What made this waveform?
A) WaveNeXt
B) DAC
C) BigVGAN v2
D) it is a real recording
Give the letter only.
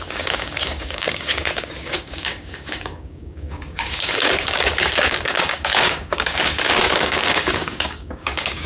B